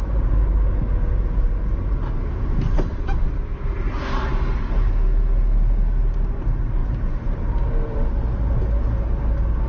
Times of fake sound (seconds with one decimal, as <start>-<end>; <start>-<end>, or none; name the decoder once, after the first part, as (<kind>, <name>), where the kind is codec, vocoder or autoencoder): 2.9-4.3 (vocoder, BigVGAN v2); 6.8-8.1